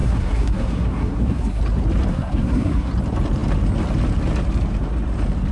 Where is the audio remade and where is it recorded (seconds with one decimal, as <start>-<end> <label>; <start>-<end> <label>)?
0.0-1.6 remade; 1.6-2.1 recorded; 2.1-2.9 remade; 2.9-5.5 recorded